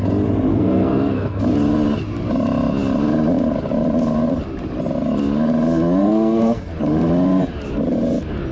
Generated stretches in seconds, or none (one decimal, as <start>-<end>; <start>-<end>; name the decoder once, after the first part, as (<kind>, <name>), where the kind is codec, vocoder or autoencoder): 0.5-1.4 (codec, SNAC); 6.0-6.7